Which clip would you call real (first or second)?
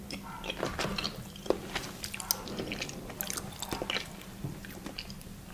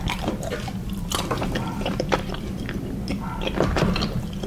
first